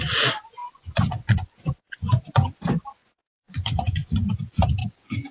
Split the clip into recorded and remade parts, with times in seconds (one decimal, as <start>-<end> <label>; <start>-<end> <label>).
0.0-0.6 recorded; 0.6-2.6 remade; 2.6-3.0 recorded; 3.0-4.3 remade; 4.3-4.8 recorded; 4.8-5.3 remade